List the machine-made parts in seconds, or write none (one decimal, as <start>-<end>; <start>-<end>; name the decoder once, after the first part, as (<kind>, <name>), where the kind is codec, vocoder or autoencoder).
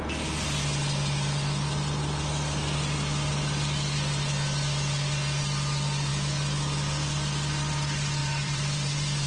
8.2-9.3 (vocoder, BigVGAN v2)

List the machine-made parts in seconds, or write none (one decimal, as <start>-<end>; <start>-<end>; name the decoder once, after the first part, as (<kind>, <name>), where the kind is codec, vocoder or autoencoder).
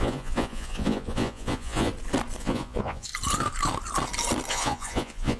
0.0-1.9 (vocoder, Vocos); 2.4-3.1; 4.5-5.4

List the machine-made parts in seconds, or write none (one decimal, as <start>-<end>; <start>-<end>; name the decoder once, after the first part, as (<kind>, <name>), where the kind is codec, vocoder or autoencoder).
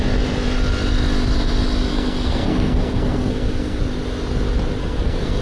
1.9-3.8 (codec, SNAC); 4.8-5.4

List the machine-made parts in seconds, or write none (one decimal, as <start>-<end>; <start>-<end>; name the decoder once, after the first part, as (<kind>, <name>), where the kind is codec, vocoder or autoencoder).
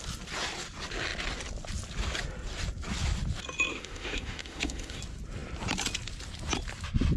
3.7-5.0 (autoencoder, DAC-VAE)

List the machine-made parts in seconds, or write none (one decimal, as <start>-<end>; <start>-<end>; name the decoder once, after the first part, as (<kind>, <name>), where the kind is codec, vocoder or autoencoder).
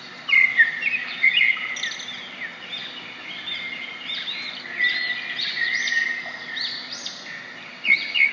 none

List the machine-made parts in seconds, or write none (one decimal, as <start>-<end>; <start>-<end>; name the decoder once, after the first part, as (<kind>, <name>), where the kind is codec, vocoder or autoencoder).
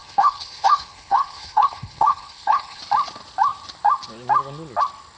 0.0-2.8 (codec, HILCodec)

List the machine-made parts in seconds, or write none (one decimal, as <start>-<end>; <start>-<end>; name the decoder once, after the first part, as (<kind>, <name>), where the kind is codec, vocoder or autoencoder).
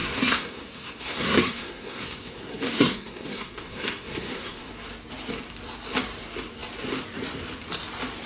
0.0-4.7 (codec, SNAC)